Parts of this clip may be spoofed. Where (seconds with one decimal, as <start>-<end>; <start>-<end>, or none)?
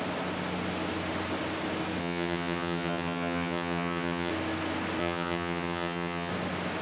2.0-4.3; 5.0-6.3